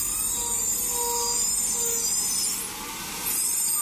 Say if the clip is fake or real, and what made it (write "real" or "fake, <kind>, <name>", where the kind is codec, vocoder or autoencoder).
real